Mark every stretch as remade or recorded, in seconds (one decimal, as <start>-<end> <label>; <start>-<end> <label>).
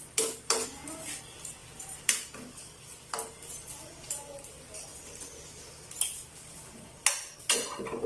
0.0-1.6 recorded; 1.6-2.9 remade; 2.9-8.1 recorded